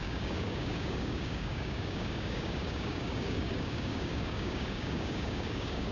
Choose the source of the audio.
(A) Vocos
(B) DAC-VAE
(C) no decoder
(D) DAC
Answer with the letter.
D